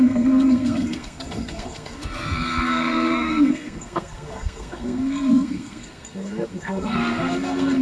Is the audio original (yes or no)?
no